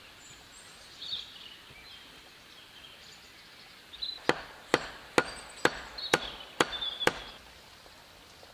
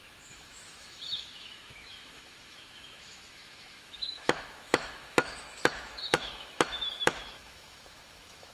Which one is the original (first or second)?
first